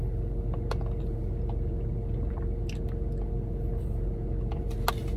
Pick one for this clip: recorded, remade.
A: recorded